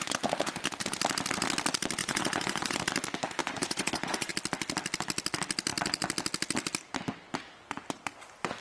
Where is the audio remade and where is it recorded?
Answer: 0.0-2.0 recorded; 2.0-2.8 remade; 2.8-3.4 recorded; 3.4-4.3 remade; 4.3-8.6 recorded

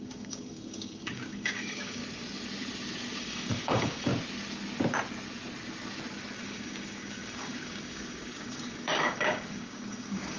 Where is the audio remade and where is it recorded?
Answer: 0.0-2.0 remade; 2.0-3.2 recorded; 3.2-4.1 remade; 4.1-6.4 recorded; 6.4-10.4 remade

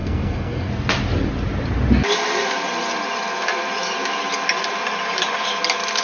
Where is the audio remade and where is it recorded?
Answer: 0.0-0.7 remade; 0.7-6.0 recorded

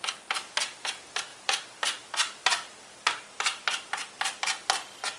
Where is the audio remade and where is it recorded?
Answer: 0.0-1.3 recorded; 1.3-4.4 remade; 4.4-5.2 recorded

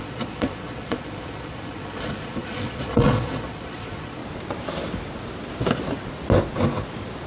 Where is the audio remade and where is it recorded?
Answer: 0.0-4.2 remade; 4.2-7.3 recorded

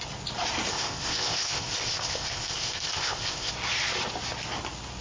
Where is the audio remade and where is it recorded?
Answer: 0.0-0.7 recorded; 0.7-3.5 remade; 3.5-5.0 recorded

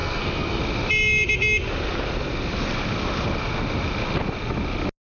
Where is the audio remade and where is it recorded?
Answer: 0.0-0.6 remade; 0.6-5.0 recorded